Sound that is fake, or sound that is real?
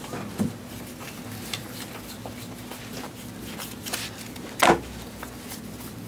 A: real